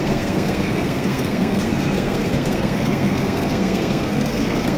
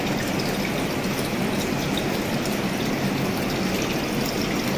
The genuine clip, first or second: second